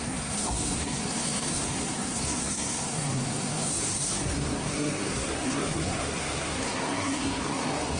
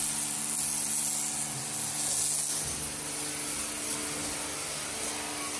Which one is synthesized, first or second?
first